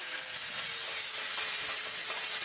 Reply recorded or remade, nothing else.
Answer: recorded